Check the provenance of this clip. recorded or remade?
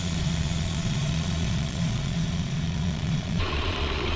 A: remade